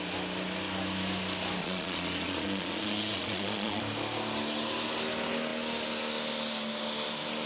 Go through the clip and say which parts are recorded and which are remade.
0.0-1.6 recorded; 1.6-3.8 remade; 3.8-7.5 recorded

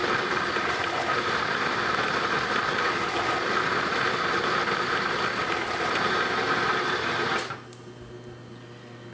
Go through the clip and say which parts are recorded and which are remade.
0.0-9.1 recorded

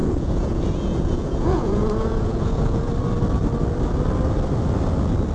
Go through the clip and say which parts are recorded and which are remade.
0.0-2.9 remade; 2.9-5.3 recorded

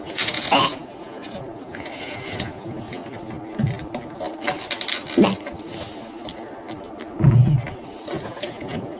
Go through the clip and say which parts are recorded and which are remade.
0.0-3.0 remade; 3.0-8.2 recorded; 8.2-9.0 remade

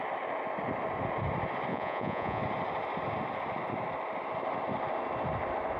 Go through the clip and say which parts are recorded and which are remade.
0.0-1.7 recorded; 1.7-2.4 remade; 2.4-5.8 recorded

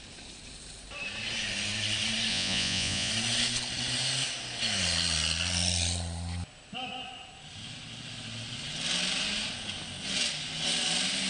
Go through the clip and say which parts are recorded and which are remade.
0.0-2.3 recorded; 2.3-3.1 remade; 3.1-11.3 recorded